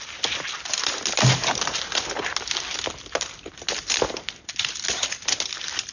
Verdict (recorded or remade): recorded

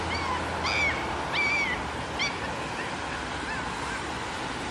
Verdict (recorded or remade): recorded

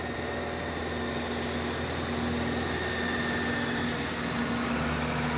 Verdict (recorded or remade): recorded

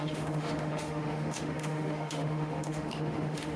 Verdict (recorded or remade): remade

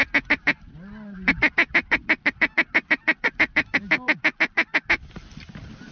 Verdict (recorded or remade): recorded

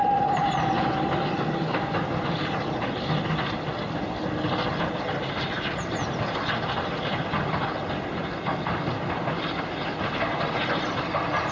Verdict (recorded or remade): recorded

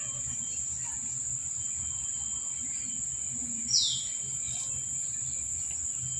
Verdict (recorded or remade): recorded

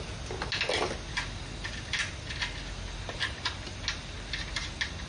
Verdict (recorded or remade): recorded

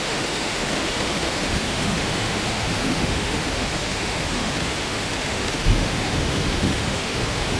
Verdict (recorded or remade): remade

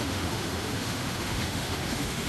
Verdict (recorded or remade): remade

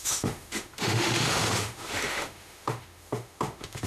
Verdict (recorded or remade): remade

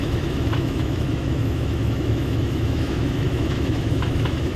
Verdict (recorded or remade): remade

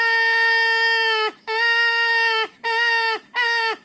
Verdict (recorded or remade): remade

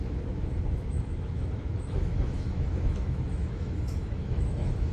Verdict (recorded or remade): remade